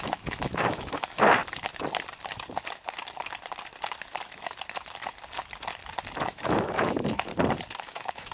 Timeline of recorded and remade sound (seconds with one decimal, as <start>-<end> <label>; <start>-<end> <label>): 0.0-1.4 remade; 1.4-6.2 recorded; 6.2-7.3 remade; 7.3-7.8 recorded; 7.8-8.3 remade